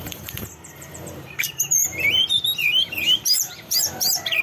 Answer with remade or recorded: remade